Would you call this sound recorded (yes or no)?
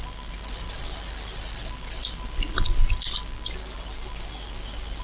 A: yes